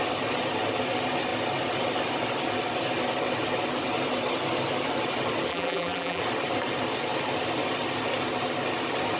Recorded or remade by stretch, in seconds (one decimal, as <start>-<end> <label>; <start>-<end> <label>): 0.0-5.5 recorded; 5.5-6.2 remade; 6.2-9.2 recorded